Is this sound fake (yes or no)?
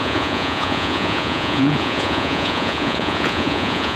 yes